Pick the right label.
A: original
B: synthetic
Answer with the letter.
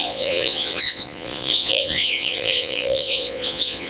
B